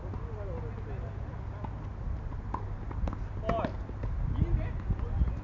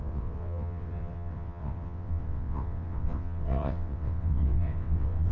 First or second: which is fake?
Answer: second